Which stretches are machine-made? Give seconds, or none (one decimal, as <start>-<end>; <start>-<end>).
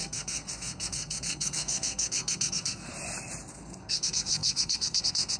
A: 0.0-2.9; 3.5-5.4